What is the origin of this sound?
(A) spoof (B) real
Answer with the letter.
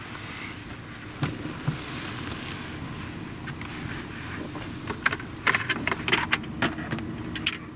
B